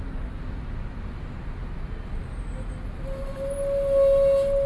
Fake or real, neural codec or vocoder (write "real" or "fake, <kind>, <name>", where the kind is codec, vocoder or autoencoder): real